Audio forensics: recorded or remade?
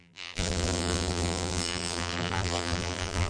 remade